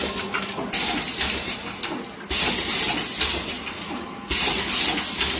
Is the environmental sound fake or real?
real